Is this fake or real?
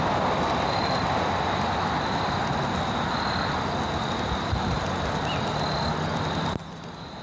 real